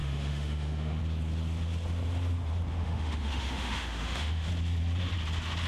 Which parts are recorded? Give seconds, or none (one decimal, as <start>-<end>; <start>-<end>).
1.0-2.7; 4.5-5.7